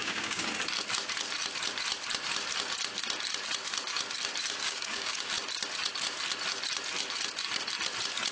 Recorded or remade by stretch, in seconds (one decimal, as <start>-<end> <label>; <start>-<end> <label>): 0.0-0.5 remade; 0.5-4.6 recorded; 4.6-5.3 remade; 5.3-8.3 recorded